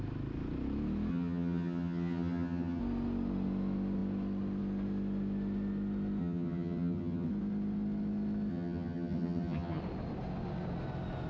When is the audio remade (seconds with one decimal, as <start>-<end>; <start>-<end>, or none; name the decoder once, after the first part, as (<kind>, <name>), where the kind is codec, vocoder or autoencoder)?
1.1-2.8 (vocoder, HiFi-GAN); 6.2-7.3; 8.5-9.8